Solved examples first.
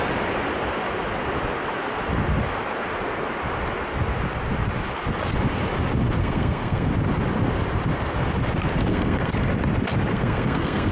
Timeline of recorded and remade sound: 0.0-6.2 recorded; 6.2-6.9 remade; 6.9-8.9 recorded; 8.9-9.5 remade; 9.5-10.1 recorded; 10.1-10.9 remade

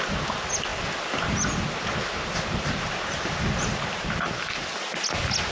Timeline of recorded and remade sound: 0.0-5.5 recorded

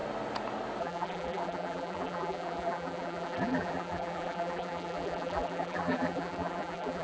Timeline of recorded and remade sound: 0.0-0.8 recorded; 0.8-7.0 remade

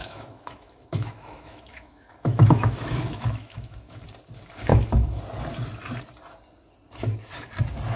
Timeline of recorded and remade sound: 0.0-4.0 remade; 4.0-4.7 recorded; 4.7-5.2 remade; 5.2-8.0 recorded